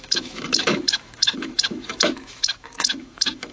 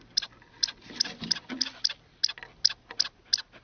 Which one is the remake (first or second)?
first